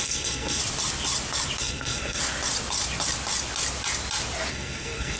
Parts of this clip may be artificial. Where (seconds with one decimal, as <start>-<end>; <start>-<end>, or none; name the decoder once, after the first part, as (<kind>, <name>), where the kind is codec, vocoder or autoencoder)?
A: 0.0-0.6 (codec, SNAC); 1.6-2.2; 4.5-5.2